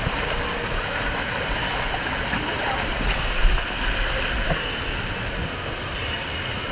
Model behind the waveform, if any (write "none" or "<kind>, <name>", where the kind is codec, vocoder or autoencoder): none